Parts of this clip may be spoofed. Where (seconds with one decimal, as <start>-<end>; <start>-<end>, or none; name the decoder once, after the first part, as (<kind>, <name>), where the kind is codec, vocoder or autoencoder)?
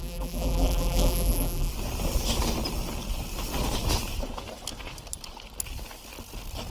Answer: 0.0-1.7 (vocoder, BigVGAN v2)